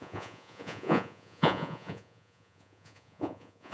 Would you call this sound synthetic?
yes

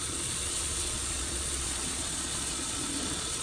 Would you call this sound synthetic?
yes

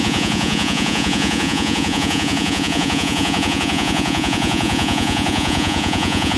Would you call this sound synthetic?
yes